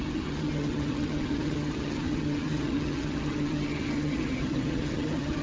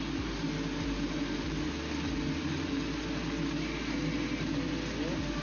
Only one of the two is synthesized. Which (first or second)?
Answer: first